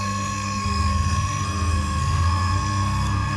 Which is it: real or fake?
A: fake